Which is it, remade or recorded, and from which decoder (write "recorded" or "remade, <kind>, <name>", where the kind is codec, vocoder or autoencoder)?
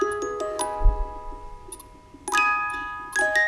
recorded